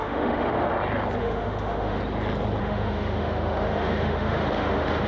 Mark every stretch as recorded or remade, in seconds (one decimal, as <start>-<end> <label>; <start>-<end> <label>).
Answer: 0.0-0.7 remade; 0.7-1.2 recorded; 1.2-2.0 remade; 2.0-2.6 recorded; 2.6-5.1 remade